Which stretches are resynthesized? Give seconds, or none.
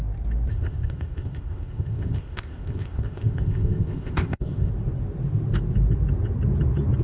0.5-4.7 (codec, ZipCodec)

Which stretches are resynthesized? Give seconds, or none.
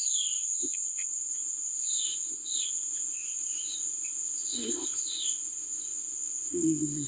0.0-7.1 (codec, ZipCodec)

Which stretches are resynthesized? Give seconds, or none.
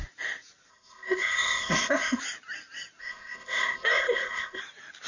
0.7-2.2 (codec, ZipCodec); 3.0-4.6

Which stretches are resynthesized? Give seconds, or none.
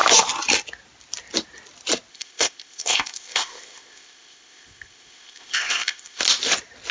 2.1-6.2 (codec, ZipCodec)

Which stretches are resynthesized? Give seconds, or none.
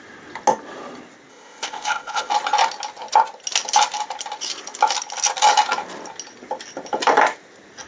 1.3-2.3 (codec, ZipCodec)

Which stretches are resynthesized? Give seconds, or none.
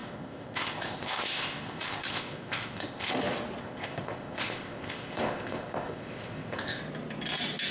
0.0-3.1 (codec, ZipCodec); 3.6-6.8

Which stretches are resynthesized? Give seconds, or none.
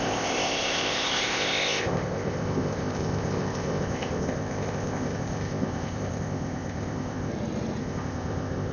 0.0-7.3 (codec, ZipCodec); 7.8-8.7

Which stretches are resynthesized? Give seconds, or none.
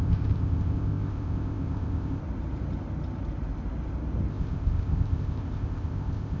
0.0-2.2 (codec, ZipCodec); 4.3-6.4